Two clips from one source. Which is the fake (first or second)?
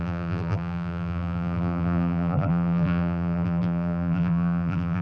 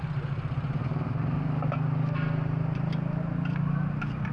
first